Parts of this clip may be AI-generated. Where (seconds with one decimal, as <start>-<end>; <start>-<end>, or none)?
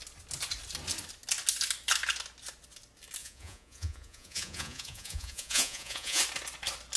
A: 3.2-6.2